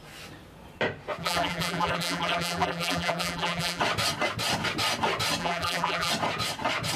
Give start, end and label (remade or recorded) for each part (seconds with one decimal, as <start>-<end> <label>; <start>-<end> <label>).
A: 0.0-1.2 recorded; 1.2-3.8 remade; 3.8-5.4 recorded; 5.4-6.1 remade; 6.1-7.0 recorded

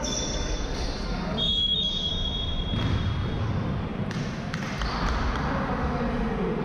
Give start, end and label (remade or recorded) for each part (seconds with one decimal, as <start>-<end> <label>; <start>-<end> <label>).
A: 0.0-2.1 remade; 2.1-3.5 recorded; 3.5-3.9 remade; 3.9-6.6 recorded

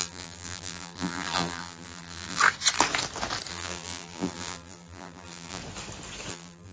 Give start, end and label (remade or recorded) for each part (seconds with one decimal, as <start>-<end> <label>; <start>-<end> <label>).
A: 0.0-2.4 remade; 2.4-3.5 recorded; 3.5-5.6 remade; 5.6-6.3 recorded; 6.3-6.7 remade